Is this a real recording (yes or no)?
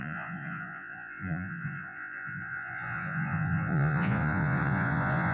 no